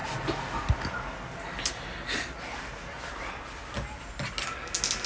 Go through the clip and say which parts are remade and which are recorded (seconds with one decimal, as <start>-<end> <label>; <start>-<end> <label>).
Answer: 0.0-5.1 recorded